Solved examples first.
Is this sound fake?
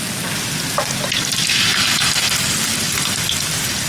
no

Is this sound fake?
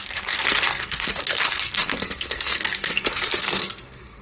yes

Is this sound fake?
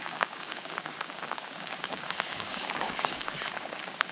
yes